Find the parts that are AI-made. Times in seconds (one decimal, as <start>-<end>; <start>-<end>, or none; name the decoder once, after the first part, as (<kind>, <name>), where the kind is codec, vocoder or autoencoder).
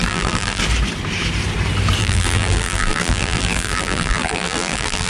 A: 0.0-0.6 (vocoder, BigVGAN v2); 2.0-5.1